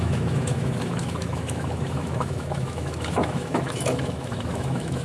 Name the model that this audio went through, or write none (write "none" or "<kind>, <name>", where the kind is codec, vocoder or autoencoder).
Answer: autoencoder, DAC-VAE